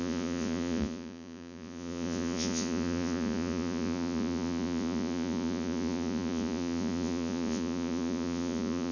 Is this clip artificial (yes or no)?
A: yes